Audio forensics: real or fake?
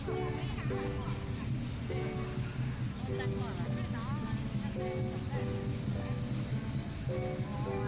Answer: real